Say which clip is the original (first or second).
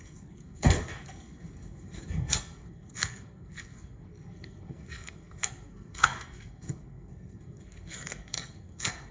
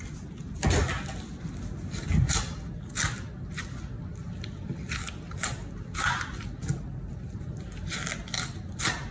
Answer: second